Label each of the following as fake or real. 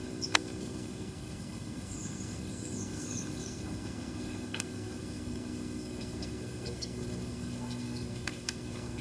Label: fake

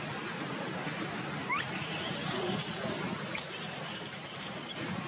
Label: real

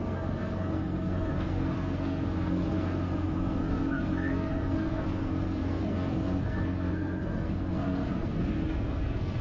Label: fake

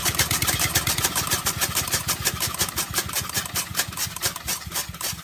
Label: real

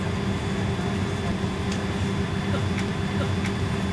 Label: real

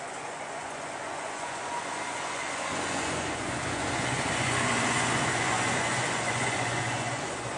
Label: fake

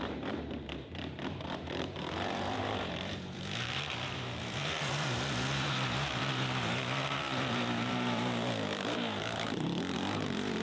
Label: fake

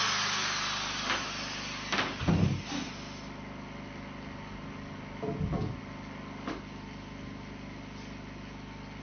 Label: real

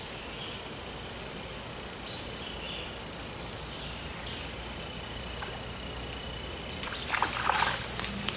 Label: real